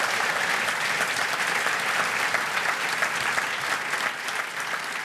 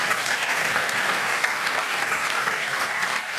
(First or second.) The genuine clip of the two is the first